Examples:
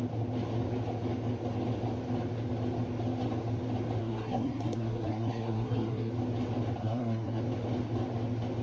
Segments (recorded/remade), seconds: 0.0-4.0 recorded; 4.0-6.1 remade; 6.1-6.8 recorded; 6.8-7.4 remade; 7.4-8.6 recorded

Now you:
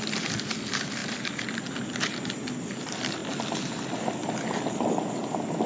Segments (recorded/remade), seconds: 0.0-5.7 recorded

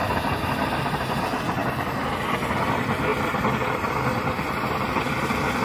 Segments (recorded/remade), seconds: 0.0-5.6 recorded

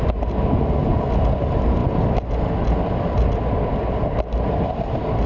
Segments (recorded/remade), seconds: 0.0-5.3 recorded

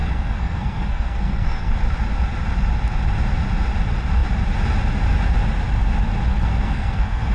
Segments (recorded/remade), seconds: 0.0-1.7 remade; 1.7-6.3 recorded; 6.3-7.3 remade

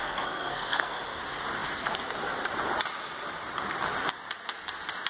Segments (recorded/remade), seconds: 0.0-1.2 remade; 1.2-5.1 recorded

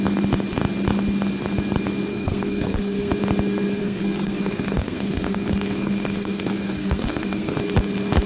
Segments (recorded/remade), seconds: 0.0-2.1 recorded; 2.1-3.1 remade; 3.1-3.8 recorded; 3.8-7.6 remade; 7.6-8.3 recorded

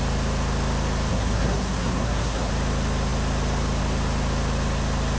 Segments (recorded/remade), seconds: 0.0-1.1 recorded; 1.1-2.5 remade; 2.5-5.2 recorded